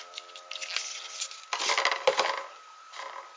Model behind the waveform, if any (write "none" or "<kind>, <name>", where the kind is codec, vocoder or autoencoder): none